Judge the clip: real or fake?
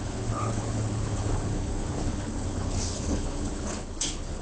fake